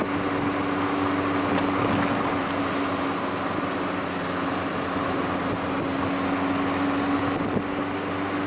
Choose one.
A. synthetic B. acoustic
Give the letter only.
B